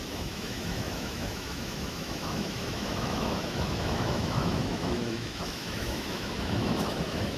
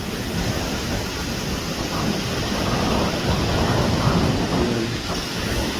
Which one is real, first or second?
second